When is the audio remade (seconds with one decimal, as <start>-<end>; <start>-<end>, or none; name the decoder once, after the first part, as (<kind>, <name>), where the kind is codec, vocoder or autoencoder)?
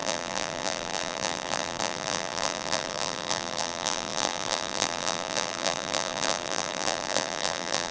0.0-7.9 (vocoder, BigVGAN v2)